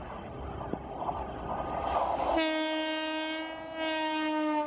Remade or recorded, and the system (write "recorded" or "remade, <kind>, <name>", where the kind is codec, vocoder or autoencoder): recorded